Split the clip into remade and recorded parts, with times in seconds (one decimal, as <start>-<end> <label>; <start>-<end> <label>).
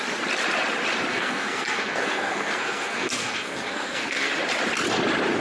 0.0-1.1 recorded; 1.1-4.3 remade; 4.3-5.4 recorded